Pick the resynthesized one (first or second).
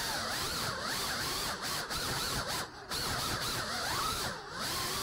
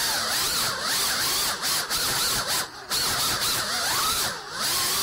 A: first